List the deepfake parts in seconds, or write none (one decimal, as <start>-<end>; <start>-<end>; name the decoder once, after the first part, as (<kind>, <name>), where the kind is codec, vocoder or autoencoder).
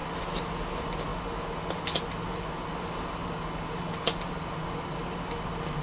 none